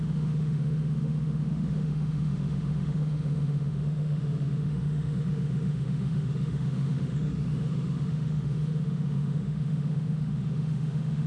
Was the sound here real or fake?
fake